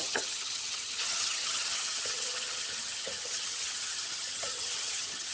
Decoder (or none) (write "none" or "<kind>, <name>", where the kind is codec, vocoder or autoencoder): vocoder, HiFi-GAN